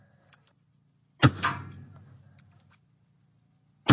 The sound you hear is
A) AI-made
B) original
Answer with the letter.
B